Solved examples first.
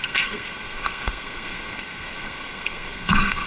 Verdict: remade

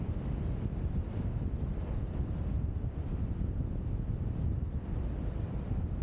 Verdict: recorded